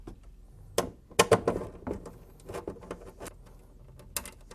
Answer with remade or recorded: recorded